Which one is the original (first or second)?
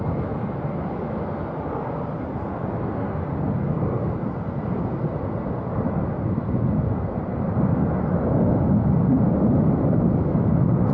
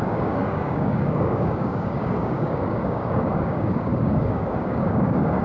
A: first